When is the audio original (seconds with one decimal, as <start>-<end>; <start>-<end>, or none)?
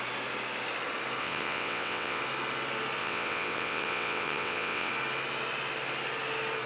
0.0-1.2; 2.2-3.0; 4.9-6.7